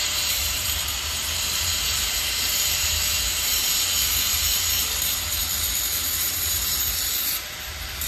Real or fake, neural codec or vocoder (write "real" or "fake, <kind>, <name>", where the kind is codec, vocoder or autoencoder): fake, vocoder, BigVGAN v2